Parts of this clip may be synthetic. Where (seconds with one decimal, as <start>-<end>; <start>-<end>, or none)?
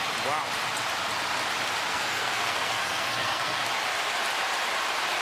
1.9-3.6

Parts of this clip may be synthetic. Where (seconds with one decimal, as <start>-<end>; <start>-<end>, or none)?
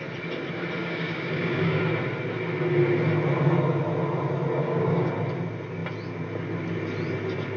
0.8-1.8; 4.6-5.1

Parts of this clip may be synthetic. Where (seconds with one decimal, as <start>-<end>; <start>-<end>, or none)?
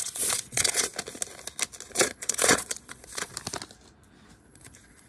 0.0-0.9; 1.9-3.3; 4.4-5.1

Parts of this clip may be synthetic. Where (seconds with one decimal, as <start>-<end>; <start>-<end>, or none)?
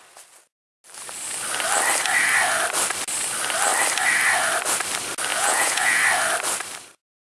5.3-6.0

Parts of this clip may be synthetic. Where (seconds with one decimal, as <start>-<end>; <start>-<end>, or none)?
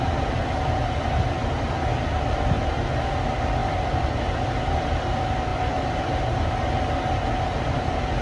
none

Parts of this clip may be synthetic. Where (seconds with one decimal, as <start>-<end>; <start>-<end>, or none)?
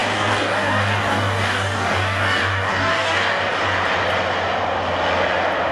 0.0-3.4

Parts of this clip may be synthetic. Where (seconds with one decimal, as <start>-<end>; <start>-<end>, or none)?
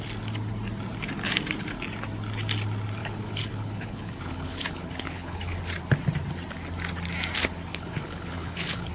3.0-5.6; 7.7-8.9